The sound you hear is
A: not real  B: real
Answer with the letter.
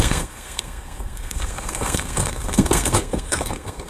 A